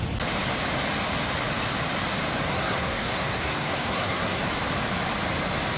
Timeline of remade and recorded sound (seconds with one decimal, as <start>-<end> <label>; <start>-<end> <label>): 0.0-2.5 recorded; 2.5-4.4 remade; 4.4-5.8 recorded